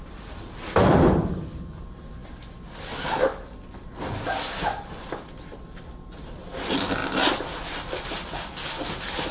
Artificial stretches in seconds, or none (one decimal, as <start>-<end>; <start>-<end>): none